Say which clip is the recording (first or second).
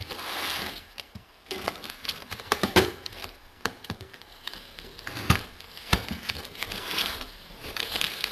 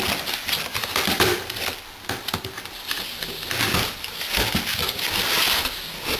second